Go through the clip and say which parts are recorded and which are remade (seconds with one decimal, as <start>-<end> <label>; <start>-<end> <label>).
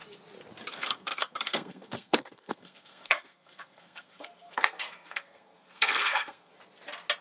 0.0-0.7 recorded; 0.7-6.5 remade; 6.5-7.2 recorded